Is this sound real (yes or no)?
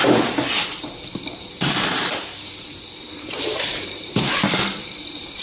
no